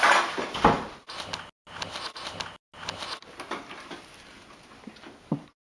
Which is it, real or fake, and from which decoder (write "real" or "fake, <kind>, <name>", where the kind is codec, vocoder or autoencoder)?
real